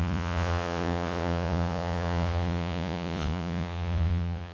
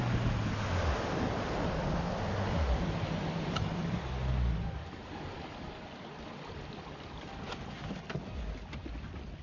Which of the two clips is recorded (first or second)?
second